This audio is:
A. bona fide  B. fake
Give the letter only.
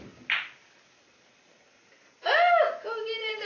A